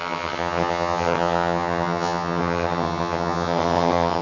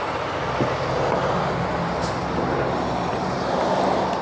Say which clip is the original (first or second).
second